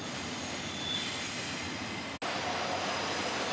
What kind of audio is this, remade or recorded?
recorded